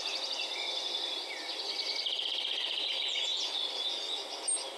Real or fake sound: real